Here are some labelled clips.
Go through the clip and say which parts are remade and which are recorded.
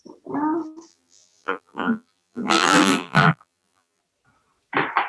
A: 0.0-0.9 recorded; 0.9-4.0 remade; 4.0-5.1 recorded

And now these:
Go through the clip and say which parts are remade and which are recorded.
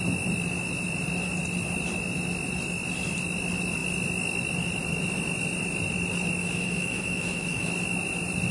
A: 0.0-6.4 recorded; 6.4-7.7 remade; 7.7-8.5 recorded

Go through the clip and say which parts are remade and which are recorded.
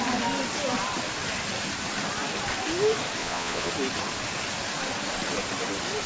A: 0.0-3.2 recorded; 3.2-3.7 remade; 3.7-6.1 recorded